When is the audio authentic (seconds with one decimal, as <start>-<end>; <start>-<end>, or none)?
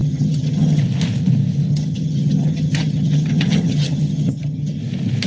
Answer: 0.8-1.7; 4.8-5.3